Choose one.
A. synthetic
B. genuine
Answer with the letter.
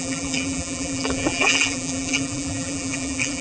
A